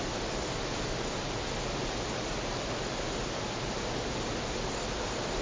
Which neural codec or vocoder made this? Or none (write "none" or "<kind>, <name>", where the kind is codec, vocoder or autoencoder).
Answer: none